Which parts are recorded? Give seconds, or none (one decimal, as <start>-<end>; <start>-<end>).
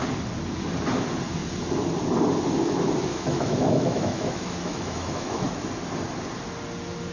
0.0-3.1; 5.4-7.1